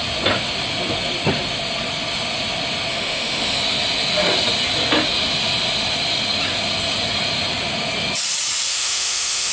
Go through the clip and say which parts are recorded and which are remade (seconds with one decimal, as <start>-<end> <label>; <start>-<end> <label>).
0.0-2.9 recorded; 2.9-3.6 remade; 3.6-8.7 recorded; 8.7-9.5 remade